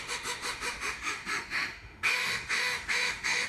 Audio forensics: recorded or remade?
remade